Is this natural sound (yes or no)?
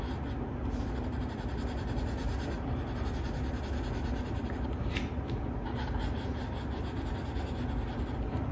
yes